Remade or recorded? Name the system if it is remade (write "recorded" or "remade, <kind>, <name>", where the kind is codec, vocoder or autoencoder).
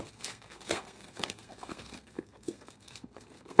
remade, codec, SNAC